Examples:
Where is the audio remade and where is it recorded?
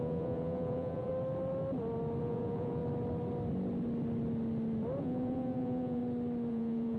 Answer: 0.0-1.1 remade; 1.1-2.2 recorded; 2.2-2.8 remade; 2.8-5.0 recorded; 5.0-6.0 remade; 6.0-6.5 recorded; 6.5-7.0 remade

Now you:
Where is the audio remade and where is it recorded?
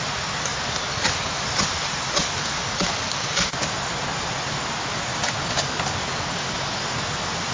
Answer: 0.0-7.5 recorded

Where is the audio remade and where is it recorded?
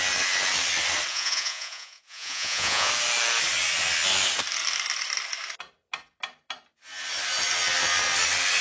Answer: 0.0-1.1 recorded; 1.1-2.9 remade; 2.9-8.6 recorded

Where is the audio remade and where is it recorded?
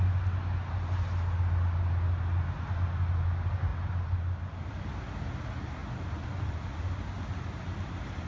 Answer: 0.0-8.3 recorded